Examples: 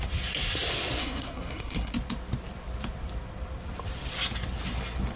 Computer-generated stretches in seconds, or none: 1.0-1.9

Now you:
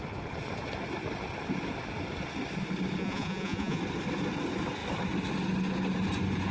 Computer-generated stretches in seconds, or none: 3.0-3.8

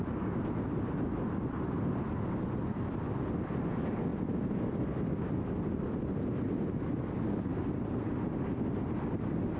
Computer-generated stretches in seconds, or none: none

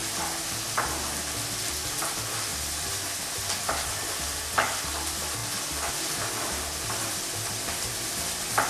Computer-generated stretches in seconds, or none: 1.9-5.4; 5.9-8.7

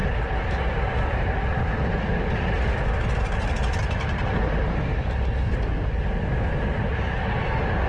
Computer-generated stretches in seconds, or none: 0.0-4.7

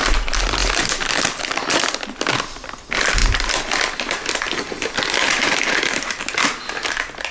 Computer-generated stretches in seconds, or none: none